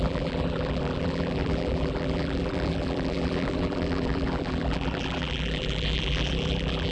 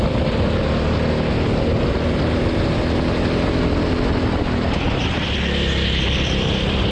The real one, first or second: second